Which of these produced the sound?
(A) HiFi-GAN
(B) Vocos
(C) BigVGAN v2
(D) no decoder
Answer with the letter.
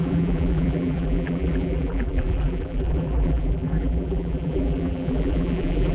C